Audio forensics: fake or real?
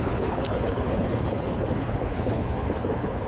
fake